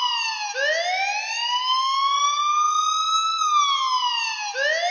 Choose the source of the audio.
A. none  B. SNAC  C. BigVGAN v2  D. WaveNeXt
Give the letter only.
A